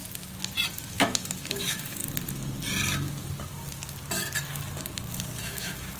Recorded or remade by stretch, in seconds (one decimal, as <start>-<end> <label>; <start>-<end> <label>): 0.0-0.8 recorded; 0.8-2.0 remade; 2.0-5.4 recorded; 5.4-6.0 remade